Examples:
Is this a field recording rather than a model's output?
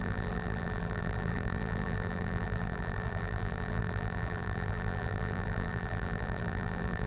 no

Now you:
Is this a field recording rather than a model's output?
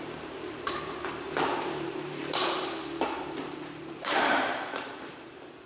no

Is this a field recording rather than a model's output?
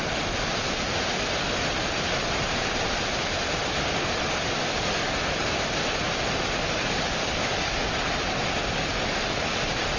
yes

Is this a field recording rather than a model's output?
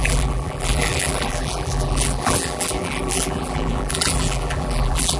no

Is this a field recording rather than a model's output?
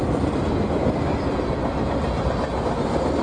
yes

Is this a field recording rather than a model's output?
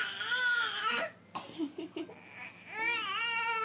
yes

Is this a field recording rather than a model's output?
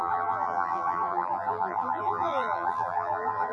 no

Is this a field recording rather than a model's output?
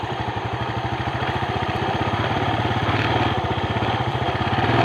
no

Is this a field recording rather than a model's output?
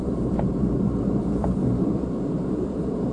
no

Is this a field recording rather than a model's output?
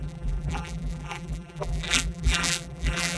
no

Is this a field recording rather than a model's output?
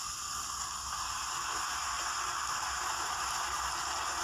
yes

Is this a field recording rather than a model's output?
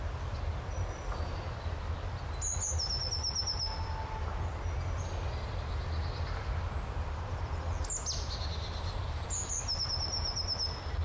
yes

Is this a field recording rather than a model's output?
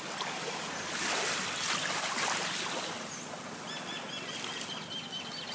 yes